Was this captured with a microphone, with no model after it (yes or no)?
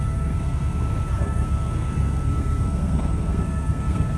no